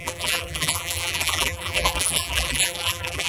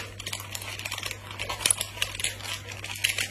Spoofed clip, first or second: first